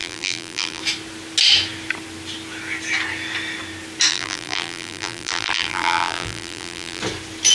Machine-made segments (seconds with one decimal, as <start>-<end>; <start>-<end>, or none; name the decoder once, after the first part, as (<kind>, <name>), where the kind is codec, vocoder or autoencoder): 0.0-0.8 (vocoder, BigVGAN v2); 4.1-7.0